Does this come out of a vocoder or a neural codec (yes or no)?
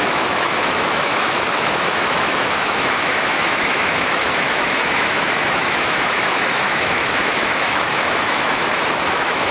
yes